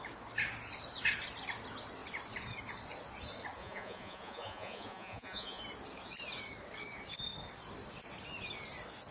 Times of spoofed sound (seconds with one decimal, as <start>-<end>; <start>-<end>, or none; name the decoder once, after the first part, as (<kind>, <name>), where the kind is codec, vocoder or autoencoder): 3.6-5.6 (vocoder, Vocos)